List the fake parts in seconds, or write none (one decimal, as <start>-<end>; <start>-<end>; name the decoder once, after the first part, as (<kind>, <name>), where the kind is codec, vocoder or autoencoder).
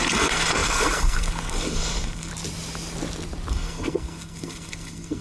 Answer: 0.0-2.3 (codec, SNAC); 3.5-5.2